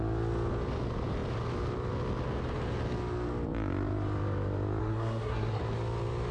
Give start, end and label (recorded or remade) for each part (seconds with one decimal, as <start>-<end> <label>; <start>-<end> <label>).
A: 0.0-4.8 recorded; 4.8-5.6 remade; 5.6-6.3 recorded